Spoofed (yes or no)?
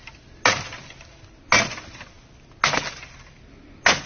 no